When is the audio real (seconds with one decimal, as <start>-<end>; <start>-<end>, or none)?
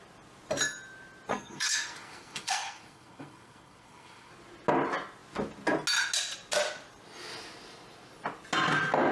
0.0-1.3; 4.3-9.1